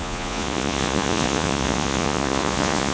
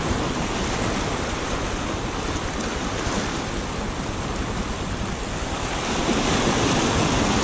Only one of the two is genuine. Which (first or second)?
second